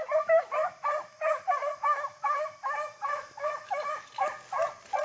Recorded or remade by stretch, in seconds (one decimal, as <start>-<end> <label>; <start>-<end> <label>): 0.0-1.1 recorded; 1.1-4.1 remade; 4.1-5.0 recorded